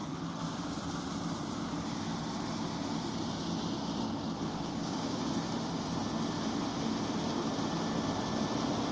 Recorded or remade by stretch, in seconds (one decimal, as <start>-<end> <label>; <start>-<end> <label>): 0.0-4.5 recorded; 4.5-5.2 remade; 5.2-8.9 recorded